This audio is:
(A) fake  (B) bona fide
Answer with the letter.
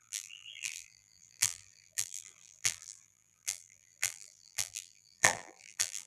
A